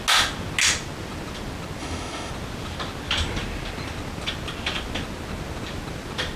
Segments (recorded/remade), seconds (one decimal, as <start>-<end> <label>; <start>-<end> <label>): 0.0-1.8 recorded; 1.8-2.3 remade; 2.3-6.4 recorded